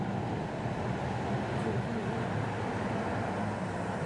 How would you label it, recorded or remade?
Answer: recorded